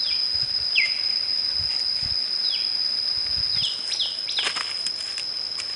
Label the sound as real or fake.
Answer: real